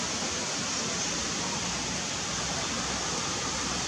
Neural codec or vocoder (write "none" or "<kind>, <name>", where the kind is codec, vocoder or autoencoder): none